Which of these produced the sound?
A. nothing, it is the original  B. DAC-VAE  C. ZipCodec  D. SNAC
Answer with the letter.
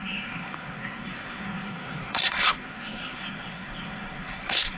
D